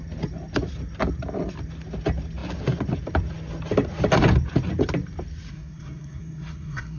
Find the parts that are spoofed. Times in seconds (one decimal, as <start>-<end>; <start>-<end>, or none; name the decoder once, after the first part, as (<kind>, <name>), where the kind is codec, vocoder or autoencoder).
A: 5.5-7.0 (codec, SNAC)